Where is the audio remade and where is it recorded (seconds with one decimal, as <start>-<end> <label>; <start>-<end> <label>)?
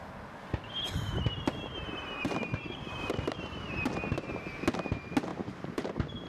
0.0-1.7 recorded; 1.7-4.4 remade; 4.4-5.3 recorded; 5.3-6.3 remade